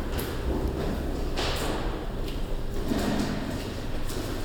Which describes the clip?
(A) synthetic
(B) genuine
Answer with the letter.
B